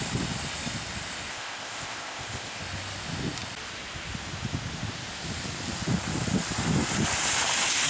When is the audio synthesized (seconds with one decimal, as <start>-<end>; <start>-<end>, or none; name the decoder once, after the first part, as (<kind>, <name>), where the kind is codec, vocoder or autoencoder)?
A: 1.3-2.6 (codec, ZipCodec)